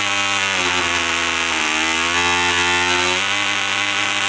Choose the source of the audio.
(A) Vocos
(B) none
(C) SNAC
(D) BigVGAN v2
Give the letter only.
B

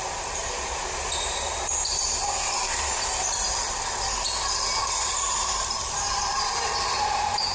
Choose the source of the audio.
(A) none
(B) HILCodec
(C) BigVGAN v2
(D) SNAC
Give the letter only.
C